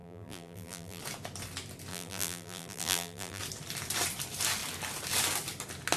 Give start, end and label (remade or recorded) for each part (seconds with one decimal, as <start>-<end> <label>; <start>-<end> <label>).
0.0-1.0 remade; 1.0-1.9 recorded; 1.9-3.4 remade; 3.4-6.0 recorded

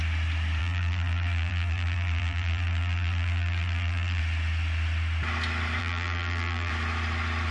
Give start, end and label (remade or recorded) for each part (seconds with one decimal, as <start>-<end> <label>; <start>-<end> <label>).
0.0-0.6 recorded; 0.6-4.2 remade; 4.2-5.8 recorded; 5.8-6.7 remade; 6.7-7.5 recorded

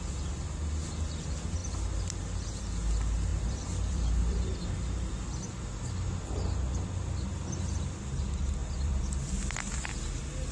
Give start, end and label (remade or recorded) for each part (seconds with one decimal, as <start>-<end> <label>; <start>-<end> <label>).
0.0-1.6 recorded; 1.6-2.2 remade; 2.2-3.3 recorded; 3.3-4.4 remade; 4.4-8.6 recorded; 8.6-9.3 remade; 9.3-10.5 recorded

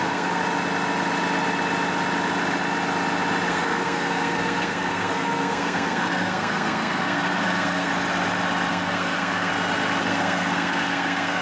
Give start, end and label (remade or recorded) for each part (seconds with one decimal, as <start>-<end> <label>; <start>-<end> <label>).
0.0-0.4 remade; 0.4-3.5 recorded; 3.5-7.9 remade; 7.9-8.7 recorded; 8.7-9.5 remade; 9.5-10.0 recorded; 10.0-11.4 remade